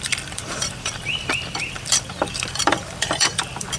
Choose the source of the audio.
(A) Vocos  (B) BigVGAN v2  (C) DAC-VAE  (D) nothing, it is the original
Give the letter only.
B